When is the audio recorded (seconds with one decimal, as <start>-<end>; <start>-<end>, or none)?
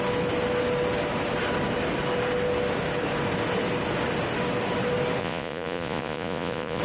0.0-5.2